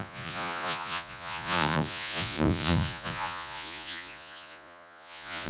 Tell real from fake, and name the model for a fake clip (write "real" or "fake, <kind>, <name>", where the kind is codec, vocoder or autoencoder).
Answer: fake, vocoder, Vocos